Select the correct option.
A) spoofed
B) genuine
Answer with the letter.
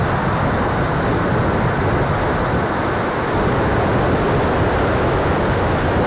B